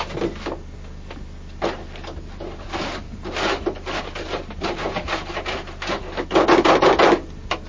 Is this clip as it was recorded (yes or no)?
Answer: yes